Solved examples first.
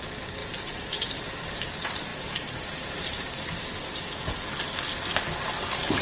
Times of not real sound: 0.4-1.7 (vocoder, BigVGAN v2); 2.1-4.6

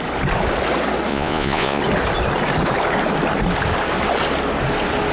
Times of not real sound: 1.1-1.8 (vocoder, Vocos)

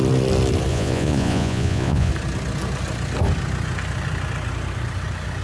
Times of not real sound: 0.7-2.1 (vocoder, Vocos)

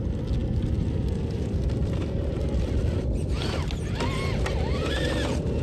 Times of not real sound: none

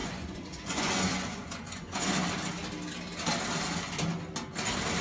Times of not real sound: 0.0-2.1 (vocoder, Vocos)

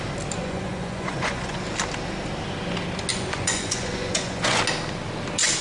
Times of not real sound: 0.4-1.6 (vocoder, Vocos); 3.1-4.6